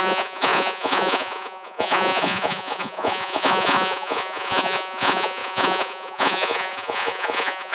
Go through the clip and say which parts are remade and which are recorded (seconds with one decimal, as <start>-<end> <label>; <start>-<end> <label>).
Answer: 0.0-7.7 remade